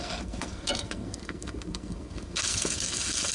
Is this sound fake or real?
fake